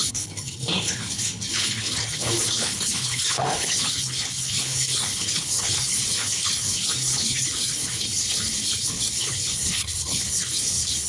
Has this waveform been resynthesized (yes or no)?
yes